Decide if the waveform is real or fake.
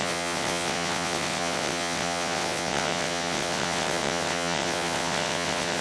fake